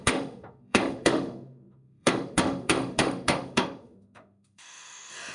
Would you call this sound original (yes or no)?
no